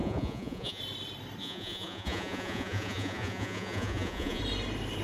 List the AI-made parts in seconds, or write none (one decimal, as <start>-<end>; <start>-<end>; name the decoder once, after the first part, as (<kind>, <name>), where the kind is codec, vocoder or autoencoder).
0.0-0.8 (vocoder, Vocos); 1.4-4.4